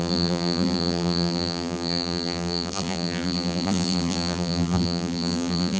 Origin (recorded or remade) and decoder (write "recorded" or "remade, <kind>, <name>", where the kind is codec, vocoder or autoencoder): remade, vocoder, BigVGAN v2